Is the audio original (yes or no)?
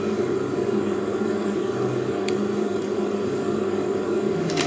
no